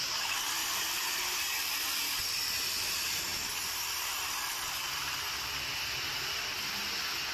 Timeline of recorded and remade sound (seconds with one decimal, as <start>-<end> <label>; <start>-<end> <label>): 0.0-0.6 recorded; 0.6-1.3 remade; 1.3-3.3 recorded; 3.3-5.6 remade; 5.6-6.1 recorded; 6.1-6.6 remade; 6.6-7.3 recorded